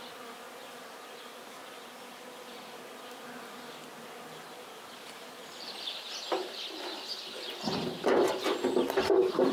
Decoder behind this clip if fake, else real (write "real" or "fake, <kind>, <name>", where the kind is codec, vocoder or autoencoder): real